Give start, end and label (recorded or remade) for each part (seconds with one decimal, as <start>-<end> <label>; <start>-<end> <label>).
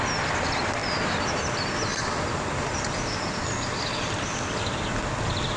0.0-5.6 recorded